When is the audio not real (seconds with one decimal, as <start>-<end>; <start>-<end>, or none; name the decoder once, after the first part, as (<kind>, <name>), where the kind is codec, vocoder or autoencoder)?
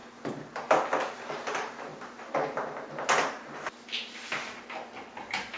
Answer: none